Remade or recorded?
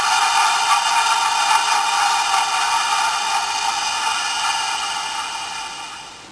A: recorded